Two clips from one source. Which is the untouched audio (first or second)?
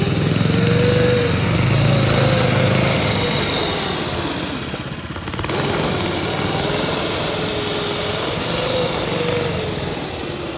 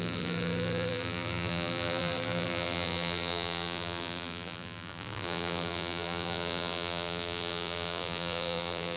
first